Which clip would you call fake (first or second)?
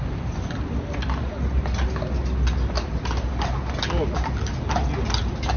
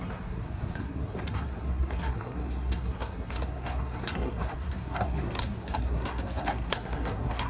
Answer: second